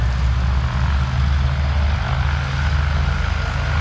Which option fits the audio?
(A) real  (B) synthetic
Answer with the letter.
A